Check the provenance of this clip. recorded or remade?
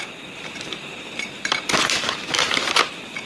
remade